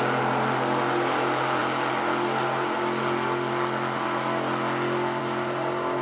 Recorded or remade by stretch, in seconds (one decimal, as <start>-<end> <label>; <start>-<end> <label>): 0.0-6.0 recorded